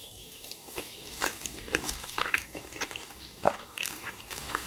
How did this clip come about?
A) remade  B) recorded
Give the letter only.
A